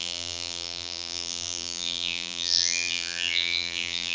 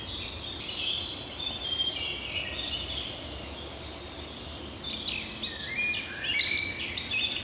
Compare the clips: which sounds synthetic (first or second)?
first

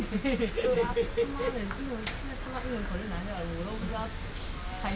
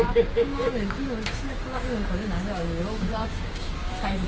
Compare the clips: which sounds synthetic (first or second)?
second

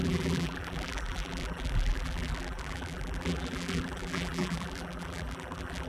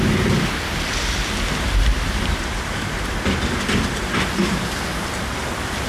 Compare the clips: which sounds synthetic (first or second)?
first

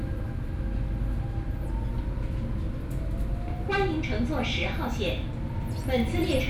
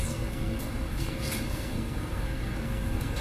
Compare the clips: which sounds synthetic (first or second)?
second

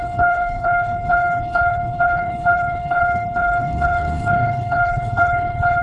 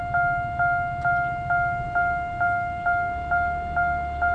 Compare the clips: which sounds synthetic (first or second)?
first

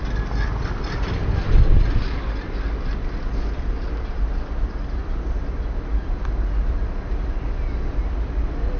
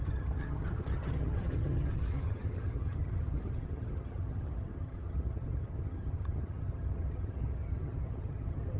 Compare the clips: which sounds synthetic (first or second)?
second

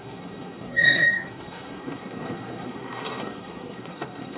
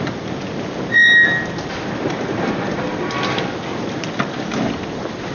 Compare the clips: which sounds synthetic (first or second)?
first